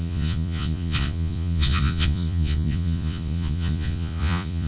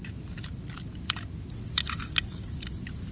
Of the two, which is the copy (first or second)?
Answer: first